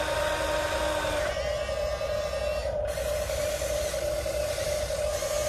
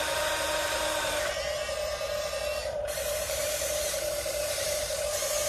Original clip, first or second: first